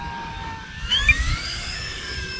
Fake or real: fake